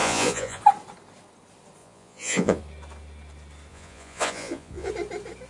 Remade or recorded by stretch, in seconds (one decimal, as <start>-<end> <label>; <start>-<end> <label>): 0.0-0.6 remade; 0.6-1.8 recorded; 1.8-2.6 remade; 2.6-3.7 recorded; 3.7-4.9 remade; 4.9-5.5 recorded